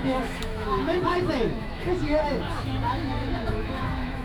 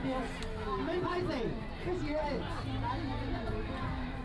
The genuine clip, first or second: second